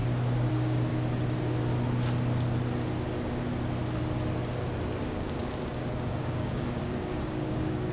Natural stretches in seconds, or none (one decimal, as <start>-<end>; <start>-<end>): 0.0-0.5; 0.9-5.0